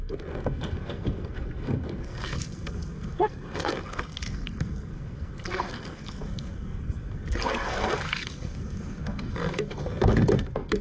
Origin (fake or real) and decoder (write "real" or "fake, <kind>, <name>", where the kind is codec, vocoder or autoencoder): fake, codec, SNAC